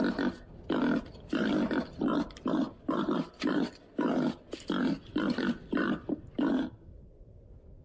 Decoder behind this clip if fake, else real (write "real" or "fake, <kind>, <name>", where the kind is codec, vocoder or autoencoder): real